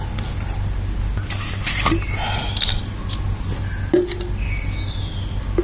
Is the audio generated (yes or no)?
no